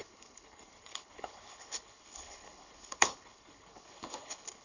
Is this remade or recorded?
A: remade